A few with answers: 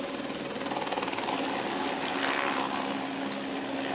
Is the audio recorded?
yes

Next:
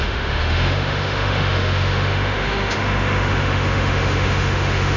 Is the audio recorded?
no